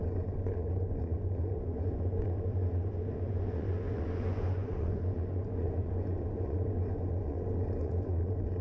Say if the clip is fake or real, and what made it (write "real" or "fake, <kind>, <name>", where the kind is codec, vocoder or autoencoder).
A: fake, vocoder, Vocos